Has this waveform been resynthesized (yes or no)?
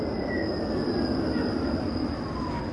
no